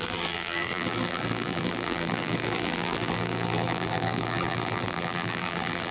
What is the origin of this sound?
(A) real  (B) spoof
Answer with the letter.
B